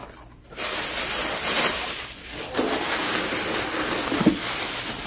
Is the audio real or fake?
real